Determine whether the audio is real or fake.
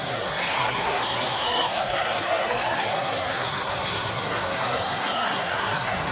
fake